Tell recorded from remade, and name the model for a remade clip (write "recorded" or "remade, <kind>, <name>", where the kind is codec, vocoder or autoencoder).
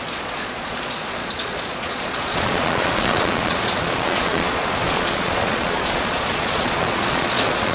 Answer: remade, vocoder, Vocos